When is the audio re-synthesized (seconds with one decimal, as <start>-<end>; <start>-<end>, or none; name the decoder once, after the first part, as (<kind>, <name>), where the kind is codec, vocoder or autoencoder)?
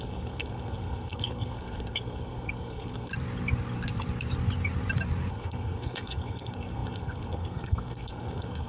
0.0-3.1 (codec, SNAC); 5.3-8.7